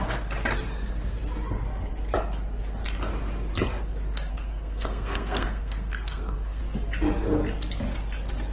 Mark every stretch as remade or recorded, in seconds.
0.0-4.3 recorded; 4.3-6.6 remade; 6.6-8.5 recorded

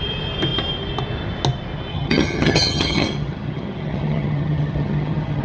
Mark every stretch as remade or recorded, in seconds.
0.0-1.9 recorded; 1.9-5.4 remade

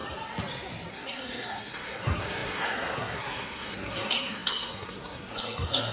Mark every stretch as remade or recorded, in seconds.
0.0-0.9 recorded; 0.9-5.9 remade

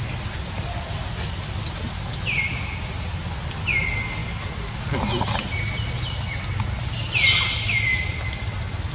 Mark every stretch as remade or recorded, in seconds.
0.0-8.9 recorded